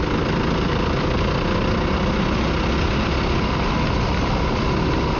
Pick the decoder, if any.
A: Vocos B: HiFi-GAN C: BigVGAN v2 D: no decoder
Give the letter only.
D